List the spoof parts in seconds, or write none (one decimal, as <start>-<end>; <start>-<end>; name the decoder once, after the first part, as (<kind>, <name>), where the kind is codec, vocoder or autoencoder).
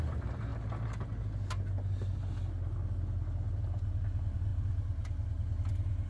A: 0.0-0.5 (vocoder, BigVGAN v2); 3.6-4.5